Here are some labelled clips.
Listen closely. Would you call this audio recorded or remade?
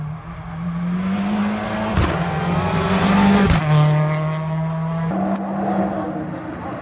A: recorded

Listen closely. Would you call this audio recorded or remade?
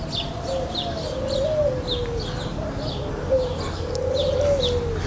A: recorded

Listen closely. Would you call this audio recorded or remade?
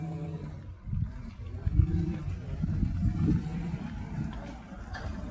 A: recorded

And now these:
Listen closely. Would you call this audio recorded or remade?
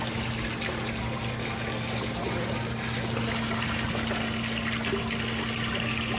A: recorded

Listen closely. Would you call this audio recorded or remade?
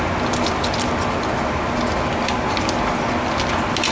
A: recorded